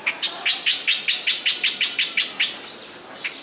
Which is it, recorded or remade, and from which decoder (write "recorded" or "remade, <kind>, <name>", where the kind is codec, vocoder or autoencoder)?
recorded